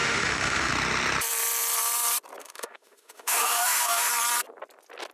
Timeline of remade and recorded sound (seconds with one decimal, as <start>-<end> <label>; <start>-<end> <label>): 0.0-0.7 remade; 0.7-2.4 recorded; 2.4-4.1 remade; 4.1-5.1 recorded